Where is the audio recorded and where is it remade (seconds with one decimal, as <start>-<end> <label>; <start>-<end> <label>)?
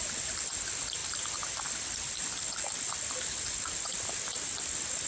0.0-5.1 recorded